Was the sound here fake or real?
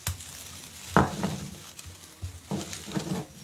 real